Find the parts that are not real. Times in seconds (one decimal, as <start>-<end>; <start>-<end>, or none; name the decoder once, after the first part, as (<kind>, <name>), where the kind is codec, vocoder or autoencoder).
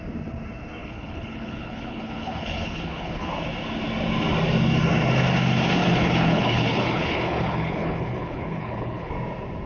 0.8-3.3 (codec, HILCodec); 5.8-9.1